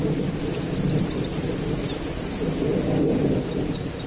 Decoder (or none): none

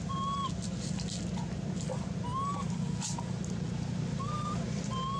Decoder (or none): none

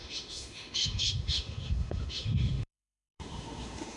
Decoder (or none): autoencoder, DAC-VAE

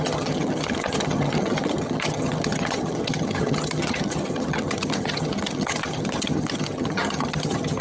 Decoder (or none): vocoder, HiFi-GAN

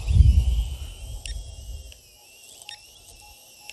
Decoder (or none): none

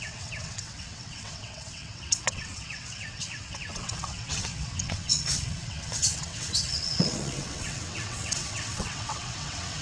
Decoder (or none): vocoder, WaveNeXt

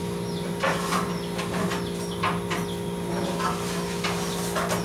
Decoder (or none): none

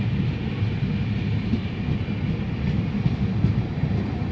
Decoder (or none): none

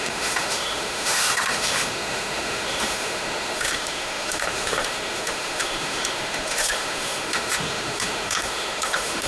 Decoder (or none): autoencoder, DAC-VAE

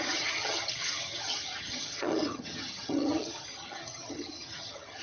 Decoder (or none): vocoder, HiFi-GAN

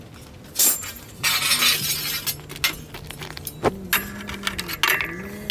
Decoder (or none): none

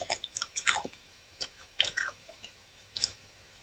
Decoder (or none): autoencoder, DAC-VAE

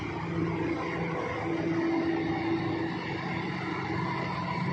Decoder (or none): none